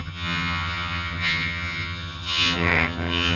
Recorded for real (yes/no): no